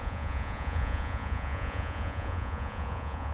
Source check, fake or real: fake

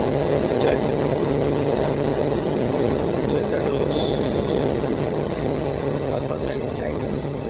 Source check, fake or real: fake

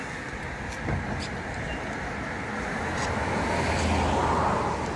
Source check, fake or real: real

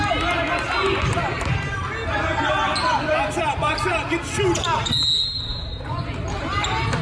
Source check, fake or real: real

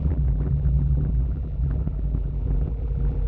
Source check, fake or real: fake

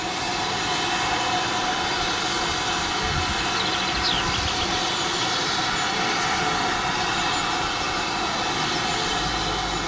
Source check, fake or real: real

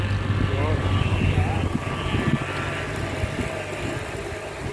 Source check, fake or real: real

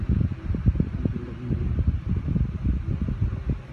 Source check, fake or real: real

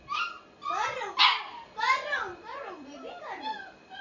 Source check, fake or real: real